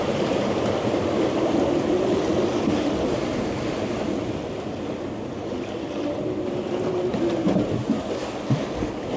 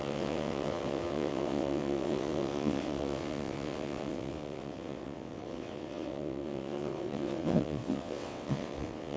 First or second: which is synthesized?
second